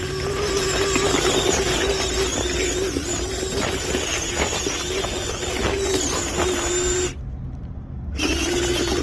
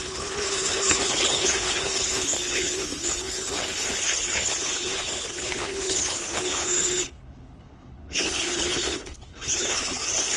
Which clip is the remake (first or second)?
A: second